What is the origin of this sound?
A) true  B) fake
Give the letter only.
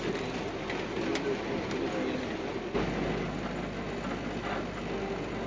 A